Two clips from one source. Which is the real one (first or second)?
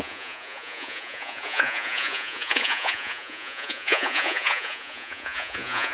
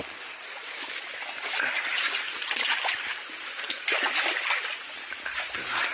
second